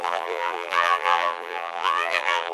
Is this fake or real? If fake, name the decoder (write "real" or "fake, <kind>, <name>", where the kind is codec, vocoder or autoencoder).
fake, vocoder, BigVGAN v2